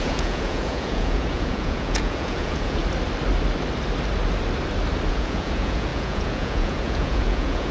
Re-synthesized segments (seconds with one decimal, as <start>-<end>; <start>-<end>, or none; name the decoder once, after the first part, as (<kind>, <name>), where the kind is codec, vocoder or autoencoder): 0.0-2.8 (vocoder, Vocos); 5.1-7.7

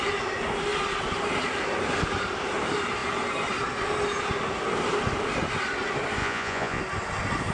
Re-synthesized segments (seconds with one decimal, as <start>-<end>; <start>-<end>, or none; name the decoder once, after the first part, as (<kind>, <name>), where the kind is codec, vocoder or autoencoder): 6.2-6.8 (vocoder, Vocos)

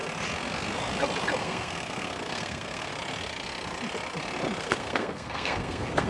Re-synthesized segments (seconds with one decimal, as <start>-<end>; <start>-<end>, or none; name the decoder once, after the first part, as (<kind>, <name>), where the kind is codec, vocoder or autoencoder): 1.4-2.9 (codec, SNAC); 4.6-6.1

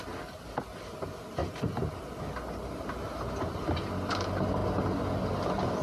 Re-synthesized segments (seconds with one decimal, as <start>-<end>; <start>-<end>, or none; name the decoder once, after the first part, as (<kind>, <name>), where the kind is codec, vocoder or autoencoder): none

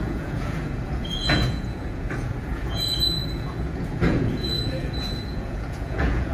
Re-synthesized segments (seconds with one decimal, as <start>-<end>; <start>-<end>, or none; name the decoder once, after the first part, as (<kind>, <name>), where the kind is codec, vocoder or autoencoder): 0.0-6.3 (vocoder, Vocos)